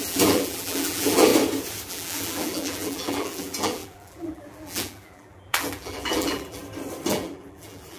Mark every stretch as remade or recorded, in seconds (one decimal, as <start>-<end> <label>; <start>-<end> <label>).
0.0-1.3 remade; 1.3-1.9 recorded; 1.9-6.6 remade; 6.6-7.1 recorded; 7.1-8.0 remade